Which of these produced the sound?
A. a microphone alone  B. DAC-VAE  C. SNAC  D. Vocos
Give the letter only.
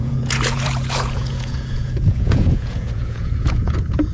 D